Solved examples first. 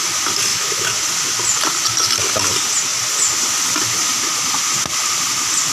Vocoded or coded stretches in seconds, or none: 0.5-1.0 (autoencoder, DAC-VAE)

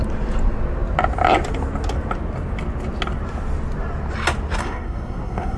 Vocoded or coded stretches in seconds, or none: 4.6-5.6 (codec, SNAC)

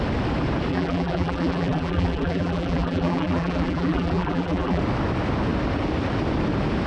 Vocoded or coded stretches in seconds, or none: 0.7-4.8 (vocoder, BigVGAN v2)

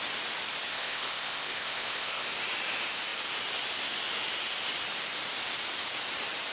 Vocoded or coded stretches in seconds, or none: 0.7-2.3 (codec, ZipCodec)

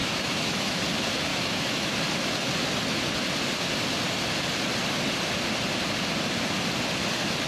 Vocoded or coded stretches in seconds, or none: 0.0-0.8 (autoencoder, DAC-VAE); 1.3-1.9

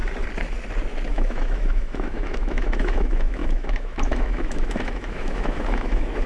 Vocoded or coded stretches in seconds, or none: 1.1-6.3 (autoencoder, DAC-VAE)

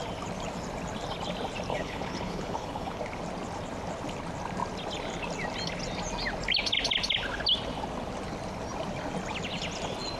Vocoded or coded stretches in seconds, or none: 1.7-3.0 (codec, HILCodec)